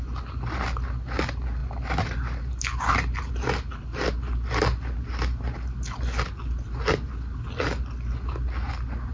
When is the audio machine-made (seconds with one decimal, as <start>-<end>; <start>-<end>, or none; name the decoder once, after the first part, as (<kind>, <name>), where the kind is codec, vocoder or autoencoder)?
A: none